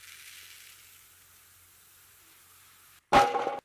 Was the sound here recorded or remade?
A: recorded